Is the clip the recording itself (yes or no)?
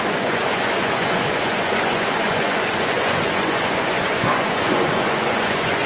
no